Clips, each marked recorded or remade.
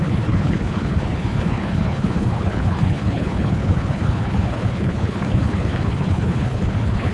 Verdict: remade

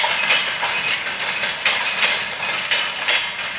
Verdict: recorded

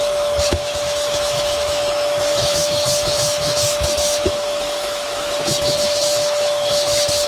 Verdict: remade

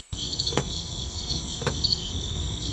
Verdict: remade